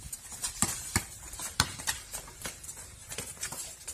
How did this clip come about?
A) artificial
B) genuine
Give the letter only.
A